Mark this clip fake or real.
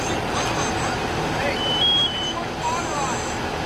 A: real